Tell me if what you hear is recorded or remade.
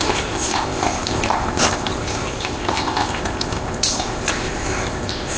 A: remade